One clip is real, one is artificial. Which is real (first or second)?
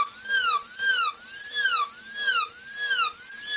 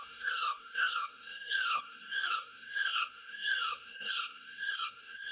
first